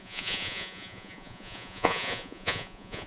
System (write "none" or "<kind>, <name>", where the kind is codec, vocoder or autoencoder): vocoder, Vocos